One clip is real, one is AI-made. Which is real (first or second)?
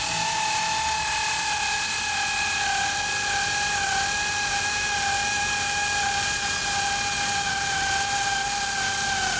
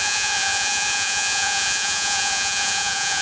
first